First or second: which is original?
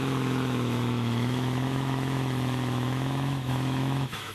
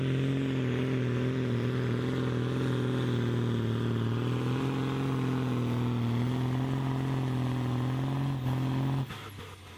second